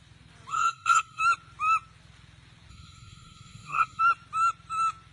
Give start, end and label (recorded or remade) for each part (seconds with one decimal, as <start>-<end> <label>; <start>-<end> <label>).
0.0-0.5 recorded; 0.5-1.2 remade; 1.2-2.7 recorded; 2.7-4.0 remade; 4.0-5.1 recorded